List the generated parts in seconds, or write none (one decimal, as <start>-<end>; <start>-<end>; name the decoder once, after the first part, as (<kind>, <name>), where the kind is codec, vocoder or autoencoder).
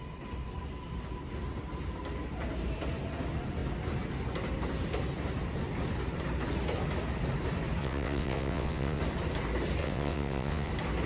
7.8-9.0 (vocoder, WaveNeXt); 9.8-10.7